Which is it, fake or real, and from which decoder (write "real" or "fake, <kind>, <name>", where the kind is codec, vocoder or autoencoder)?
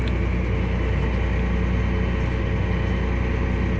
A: real